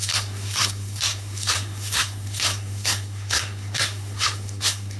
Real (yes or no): no